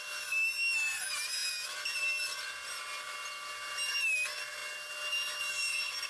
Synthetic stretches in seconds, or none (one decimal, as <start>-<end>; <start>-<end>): none